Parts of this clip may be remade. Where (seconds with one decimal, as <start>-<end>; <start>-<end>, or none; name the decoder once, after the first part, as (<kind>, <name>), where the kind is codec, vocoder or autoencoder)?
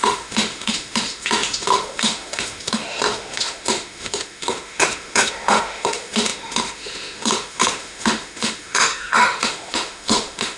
0.0-10.6 (autoencoder, DAC-VAE)